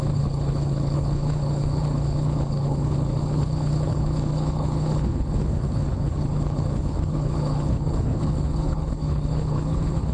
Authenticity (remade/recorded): remade